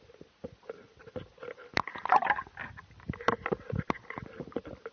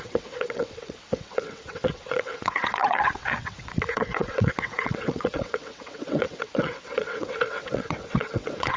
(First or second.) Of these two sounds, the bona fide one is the first